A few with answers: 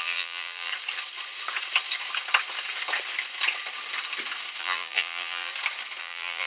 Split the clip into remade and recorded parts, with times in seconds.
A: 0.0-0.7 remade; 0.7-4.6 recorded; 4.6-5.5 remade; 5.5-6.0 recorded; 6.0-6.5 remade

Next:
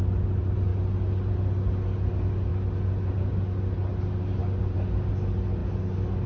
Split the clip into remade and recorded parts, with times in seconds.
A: 0.0-6.3 recorded

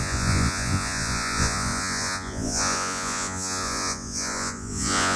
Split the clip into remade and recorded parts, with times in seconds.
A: 0.0-5.2 remade

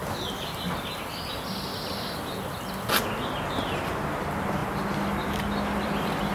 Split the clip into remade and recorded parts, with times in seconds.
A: 0.0-6.3 recorded

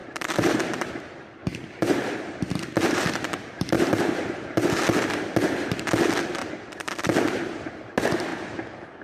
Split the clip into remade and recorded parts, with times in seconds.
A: 0.0-4.8 remade; 4.8-6.4 recorded; 6.4-6.9 remade; 6.9-9.0 recorded